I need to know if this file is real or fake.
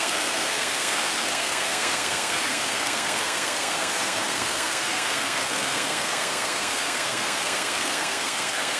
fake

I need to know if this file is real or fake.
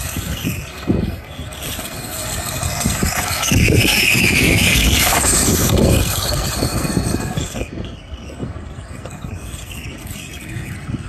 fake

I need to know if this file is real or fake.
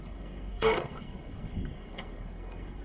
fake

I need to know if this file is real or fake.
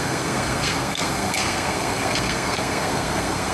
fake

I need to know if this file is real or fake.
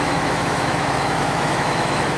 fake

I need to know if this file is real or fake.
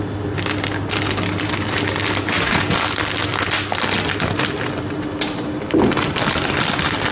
real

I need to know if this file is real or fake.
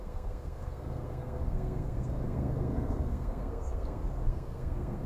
fake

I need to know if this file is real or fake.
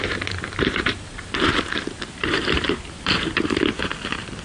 fake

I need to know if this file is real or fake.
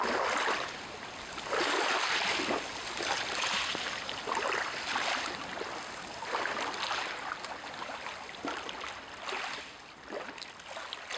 real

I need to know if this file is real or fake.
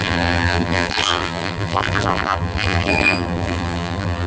fake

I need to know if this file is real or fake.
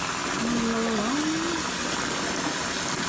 real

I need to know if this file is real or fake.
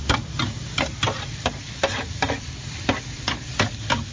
fake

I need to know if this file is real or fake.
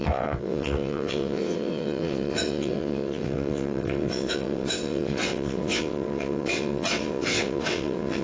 fake